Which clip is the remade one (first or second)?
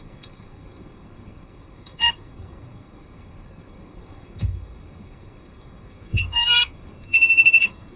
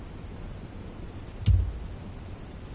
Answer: first